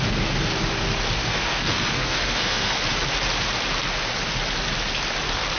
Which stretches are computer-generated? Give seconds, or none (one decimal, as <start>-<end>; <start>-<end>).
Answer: 0.0-0.5; 1.3-2.8